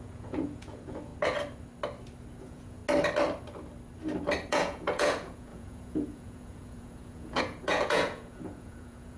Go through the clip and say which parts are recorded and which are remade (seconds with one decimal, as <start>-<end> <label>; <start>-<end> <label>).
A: 0.0-1.1 remade; 1.1-2.4 recorded; 2.4-2.8 remade; 2.8-4.5 recorded; 4.5-9.2 remade